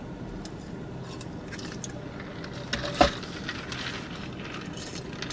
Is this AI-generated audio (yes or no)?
no